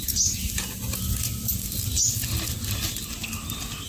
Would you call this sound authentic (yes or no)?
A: yes